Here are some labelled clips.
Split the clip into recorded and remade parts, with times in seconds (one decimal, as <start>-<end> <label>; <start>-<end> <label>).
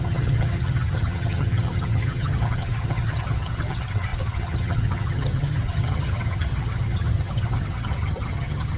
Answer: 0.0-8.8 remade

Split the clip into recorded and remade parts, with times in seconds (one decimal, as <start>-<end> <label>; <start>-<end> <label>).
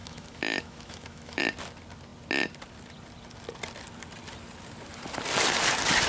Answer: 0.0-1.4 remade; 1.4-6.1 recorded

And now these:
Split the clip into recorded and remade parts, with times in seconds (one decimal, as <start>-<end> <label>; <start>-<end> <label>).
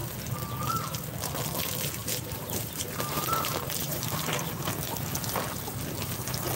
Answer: 0.0-2.0 recorded; 2.0-4.1 remade; 4.1-6.6 recorded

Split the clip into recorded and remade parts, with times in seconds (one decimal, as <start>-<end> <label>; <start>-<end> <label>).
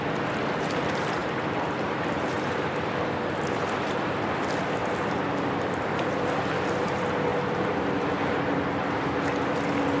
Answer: 0.0-1.2 recorded; 1.2-2.7 remade; 2.7-10.0 recorded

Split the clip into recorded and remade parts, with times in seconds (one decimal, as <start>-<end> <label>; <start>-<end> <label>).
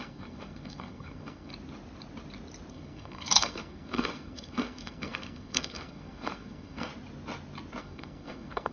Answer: 0.0-1.5 remade; 1.5-2.7 recorded; 2.7-6.9 remade; 6.9-7.8 recorded; 7.8-8.7 remade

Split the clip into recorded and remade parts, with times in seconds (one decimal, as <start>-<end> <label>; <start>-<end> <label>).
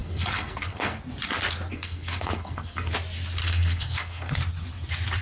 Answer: 0.0-1.0 remade; 1.0-1.7 recorded; 1.7-2.9 remade; 2.9-3.4 recorded; 3.4-4.3 remade; 4.3-5.2 recorded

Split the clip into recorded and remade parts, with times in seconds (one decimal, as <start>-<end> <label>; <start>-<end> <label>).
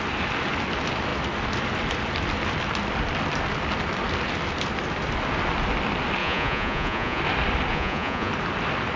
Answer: 0.0-6.2 recorded; 6.2-7.2 remade; 7.2-7.7 recorded; 7.7-8.3 remade; 8.3-9.0 recorded